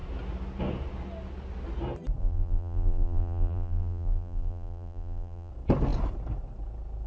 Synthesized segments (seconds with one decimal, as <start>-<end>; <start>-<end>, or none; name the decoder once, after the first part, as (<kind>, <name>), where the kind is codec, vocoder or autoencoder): 2.2-5.5 (vocoder, BigVGAN v2)